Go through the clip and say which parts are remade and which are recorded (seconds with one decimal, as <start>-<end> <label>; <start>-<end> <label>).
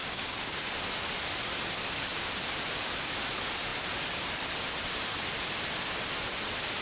0.0-0.7 remade; 0.7-6.8 recorded